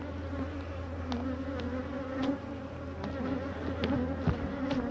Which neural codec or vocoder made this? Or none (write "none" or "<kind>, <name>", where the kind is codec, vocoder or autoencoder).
none